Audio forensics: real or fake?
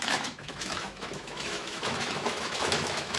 fake